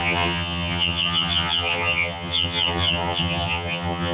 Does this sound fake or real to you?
fake